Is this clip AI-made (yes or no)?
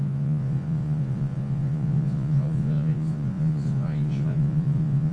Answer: yes